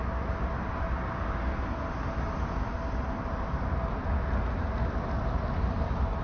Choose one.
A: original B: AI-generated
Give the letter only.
A